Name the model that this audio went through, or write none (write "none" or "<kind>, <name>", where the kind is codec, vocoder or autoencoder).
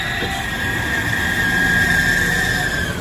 none